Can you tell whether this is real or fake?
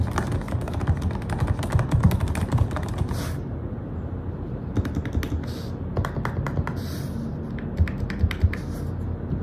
real